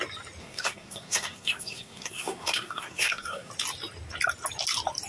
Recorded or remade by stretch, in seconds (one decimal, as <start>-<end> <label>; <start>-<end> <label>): 0.0-0.4 recorded; 0.4-3.5 remade; 3.5-5.1 recorded